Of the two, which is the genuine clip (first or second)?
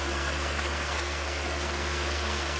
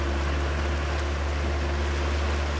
second